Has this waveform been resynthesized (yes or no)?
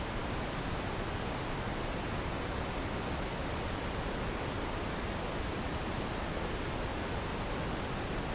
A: no